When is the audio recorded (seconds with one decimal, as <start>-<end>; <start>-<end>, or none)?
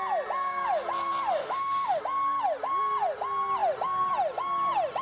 0.0-1.4; 2.0-5.0